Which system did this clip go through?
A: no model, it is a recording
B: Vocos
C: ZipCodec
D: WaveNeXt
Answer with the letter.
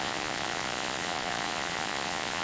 B